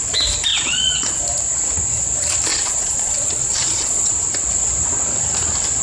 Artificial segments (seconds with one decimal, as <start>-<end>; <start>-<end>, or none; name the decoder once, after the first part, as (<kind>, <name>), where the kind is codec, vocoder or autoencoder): 0.5-1.2 (vocoder, Vocos); 2.5-4.1